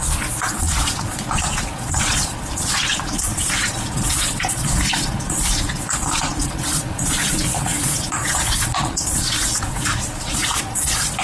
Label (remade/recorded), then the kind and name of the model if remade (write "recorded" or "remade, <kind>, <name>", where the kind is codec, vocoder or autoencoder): remade, vocoder, Vocos